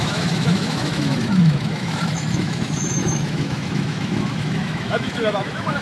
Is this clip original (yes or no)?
no